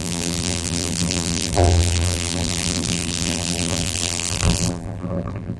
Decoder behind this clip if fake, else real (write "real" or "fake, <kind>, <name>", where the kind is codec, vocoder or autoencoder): fake, vocoder, BigVGAN v2